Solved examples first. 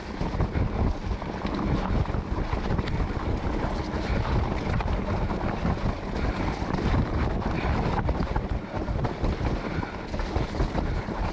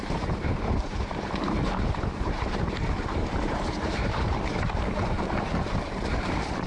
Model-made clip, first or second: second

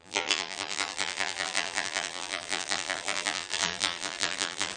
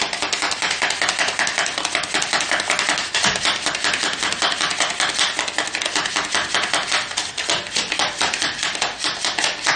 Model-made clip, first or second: first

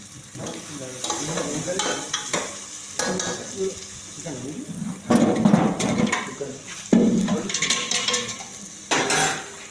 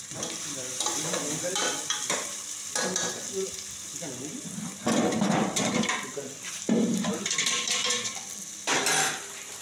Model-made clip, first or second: second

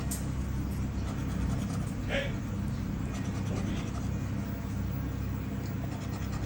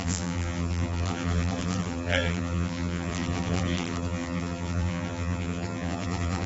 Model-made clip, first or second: second